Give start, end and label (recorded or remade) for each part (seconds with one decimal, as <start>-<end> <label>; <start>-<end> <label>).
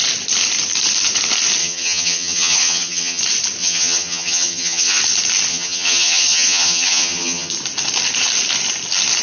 0.0-1.6 recorded; 1.6-3.2 remade; 3.2-3.6 recorded; 3.6-5.0 remade; 5.0-5.5 recorded; 5.5-7.5 remade; 7.5-9.2 recorded